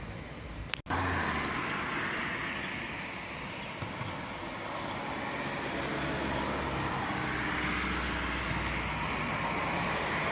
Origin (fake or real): real